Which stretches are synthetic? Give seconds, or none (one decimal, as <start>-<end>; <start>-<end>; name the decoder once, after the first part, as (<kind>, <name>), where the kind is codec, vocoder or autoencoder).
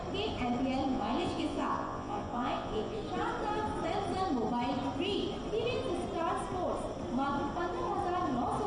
0.9-3.0 (vocoder, Vocos)